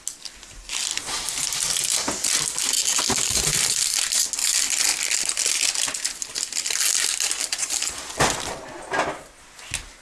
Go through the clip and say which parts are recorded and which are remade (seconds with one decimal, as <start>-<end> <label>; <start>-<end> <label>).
0.0-10.0 recorded